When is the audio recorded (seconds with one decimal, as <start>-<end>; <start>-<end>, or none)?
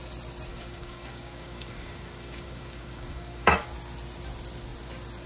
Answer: 0.0-0.5; 3.7-5.3